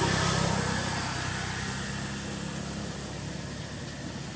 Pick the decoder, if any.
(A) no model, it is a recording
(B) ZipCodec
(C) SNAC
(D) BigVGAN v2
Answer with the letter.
A